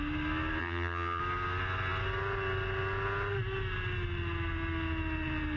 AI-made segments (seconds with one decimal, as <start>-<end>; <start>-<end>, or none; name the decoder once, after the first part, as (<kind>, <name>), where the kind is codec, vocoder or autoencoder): 0.6-1.2 (vocoder, HiFi-GAN)